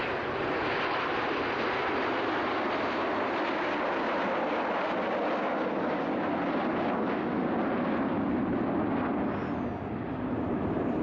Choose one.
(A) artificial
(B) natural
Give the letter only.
B